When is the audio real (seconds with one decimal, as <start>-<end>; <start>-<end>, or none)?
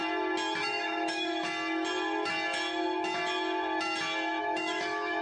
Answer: 0.0-0.6; 1.3-4.4